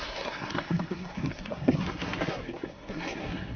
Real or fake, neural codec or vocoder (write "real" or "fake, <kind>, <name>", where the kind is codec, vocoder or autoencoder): fake, codec, SNAC